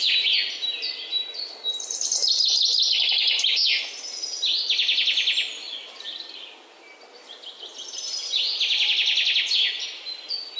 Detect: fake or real real